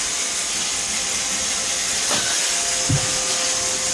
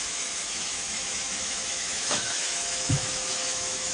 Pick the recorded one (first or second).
first